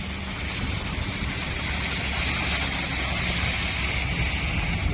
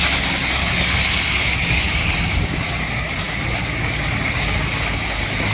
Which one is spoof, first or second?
second